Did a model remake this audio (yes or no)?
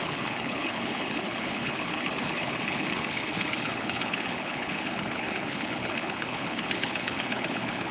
yes